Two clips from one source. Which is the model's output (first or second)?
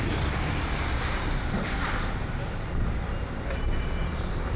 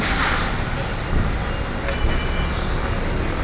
first